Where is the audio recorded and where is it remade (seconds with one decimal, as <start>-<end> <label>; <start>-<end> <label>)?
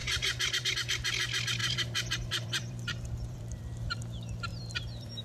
0.0-0.7 remade; 0.7-1.6 recorded; 1.6-4.0 remade; 4.0-4.5 recorded; 4.5-5.2 remade